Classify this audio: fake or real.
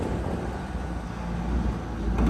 real